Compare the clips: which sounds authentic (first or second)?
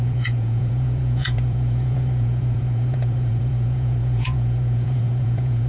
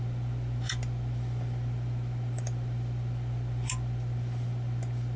second